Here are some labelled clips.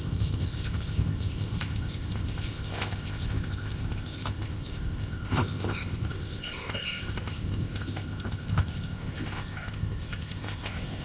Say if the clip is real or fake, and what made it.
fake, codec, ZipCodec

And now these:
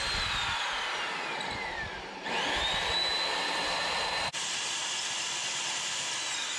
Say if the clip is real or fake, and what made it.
real